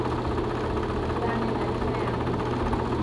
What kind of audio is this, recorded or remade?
recorded